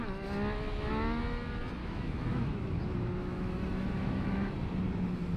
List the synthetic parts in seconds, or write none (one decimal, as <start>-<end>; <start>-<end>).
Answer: 1.8-4.5